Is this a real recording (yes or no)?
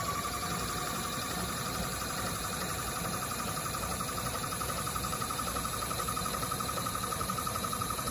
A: no